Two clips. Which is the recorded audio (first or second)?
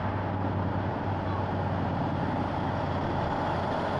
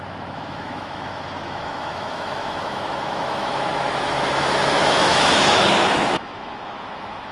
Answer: first